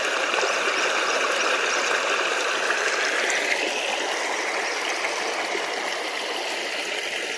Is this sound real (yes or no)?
yes